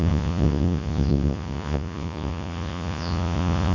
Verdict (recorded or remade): remade